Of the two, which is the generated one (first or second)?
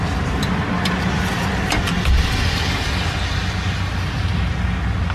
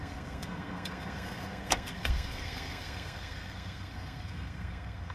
second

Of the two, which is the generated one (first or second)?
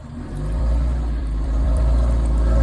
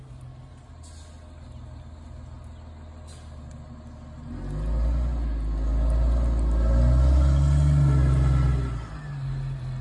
first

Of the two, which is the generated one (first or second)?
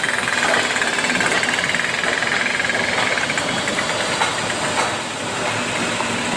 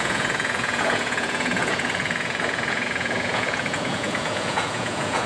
second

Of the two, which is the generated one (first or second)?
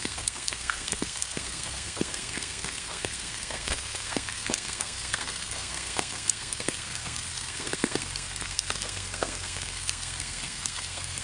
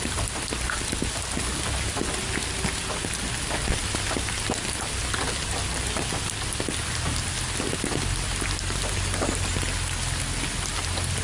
first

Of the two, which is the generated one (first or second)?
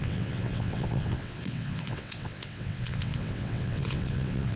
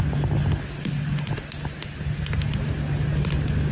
first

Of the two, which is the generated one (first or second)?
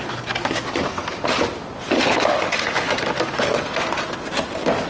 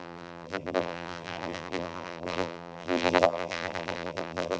second